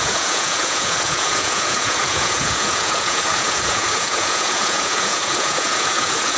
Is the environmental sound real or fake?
fake